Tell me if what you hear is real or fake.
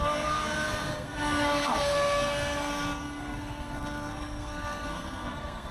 fake